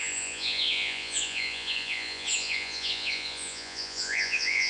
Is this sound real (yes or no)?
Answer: no